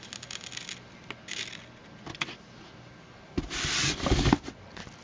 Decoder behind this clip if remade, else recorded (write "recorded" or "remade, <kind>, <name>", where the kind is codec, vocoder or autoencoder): recorded